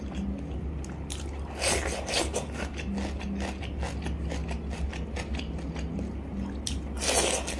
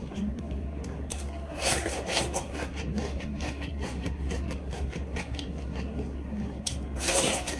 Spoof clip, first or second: second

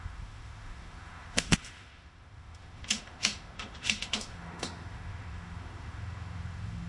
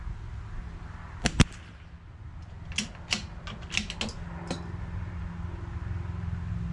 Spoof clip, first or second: first